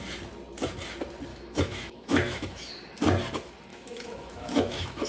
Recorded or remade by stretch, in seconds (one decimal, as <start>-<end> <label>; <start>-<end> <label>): 0.0-1.3 recorded; 1.3-2.7 remade; 2.7-3.7 recorded; 3.7-5.1 remade